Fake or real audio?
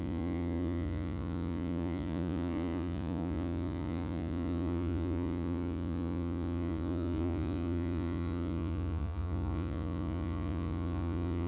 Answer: fake